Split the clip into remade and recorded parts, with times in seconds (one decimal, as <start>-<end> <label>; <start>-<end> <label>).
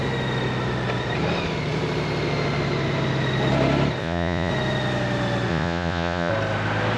0.0-4.0 recorded; 4.0-4.5 remade; 4.5-5.5 recorded; 5.5-6.3 remade; 6.3-7.0 recorded